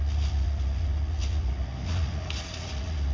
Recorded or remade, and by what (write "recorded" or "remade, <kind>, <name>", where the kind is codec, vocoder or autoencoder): remade, vocoder, Vocos